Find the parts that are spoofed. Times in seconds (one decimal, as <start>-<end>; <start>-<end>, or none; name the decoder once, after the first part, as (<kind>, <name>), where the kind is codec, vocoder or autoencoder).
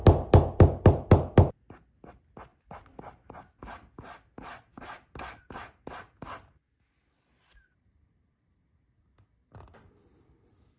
none